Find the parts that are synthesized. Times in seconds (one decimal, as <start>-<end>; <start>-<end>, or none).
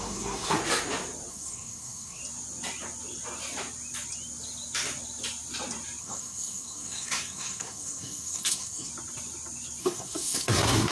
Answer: 0.0-0.6; 1.3-2.2; 6.0-8.9; 9.8-10.9